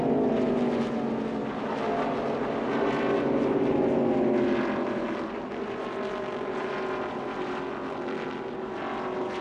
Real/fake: real